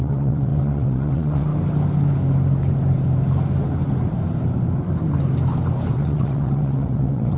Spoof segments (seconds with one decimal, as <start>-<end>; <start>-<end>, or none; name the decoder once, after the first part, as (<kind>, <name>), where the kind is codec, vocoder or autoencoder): 0.0-1.5 (vocoder, WaveNeXt); 5.9-7.4